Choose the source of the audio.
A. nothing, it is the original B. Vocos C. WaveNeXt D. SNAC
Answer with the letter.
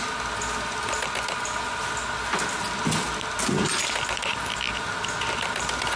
A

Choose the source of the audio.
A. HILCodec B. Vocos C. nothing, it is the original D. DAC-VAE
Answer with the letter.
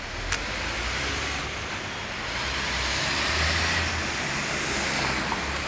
C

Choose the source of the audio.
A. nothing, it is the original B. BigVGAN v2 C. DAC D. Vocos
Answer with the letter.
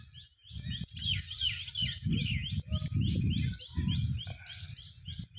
A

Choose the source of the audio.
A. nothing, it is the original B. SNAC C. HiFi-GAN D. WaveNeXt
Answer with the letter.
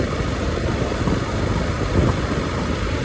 A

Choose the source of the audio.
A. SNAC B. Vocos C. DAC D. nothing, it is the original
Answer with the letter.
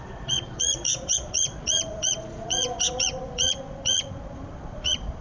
B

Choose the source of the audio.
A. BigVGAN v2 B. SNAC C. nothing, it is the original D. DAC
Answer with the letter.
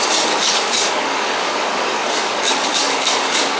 D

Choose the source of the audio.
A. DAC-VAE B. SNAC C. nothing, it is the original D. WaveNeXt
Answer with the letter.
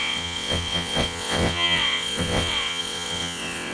D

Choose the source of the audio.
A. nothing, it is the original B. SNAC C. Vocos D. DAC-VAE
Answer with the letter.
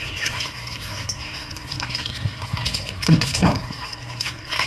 B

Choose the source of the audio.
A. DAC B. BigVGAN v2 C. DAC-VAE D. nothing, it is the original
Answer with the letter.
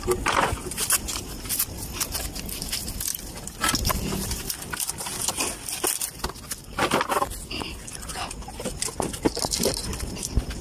D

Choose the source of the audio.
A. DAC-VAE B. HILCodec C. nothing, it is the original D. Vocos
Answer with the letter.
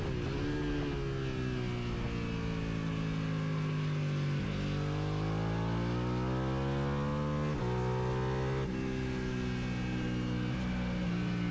C